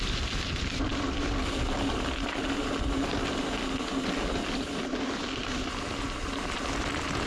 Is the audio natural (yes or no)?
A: yes